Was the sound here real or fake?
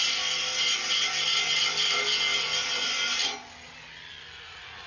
real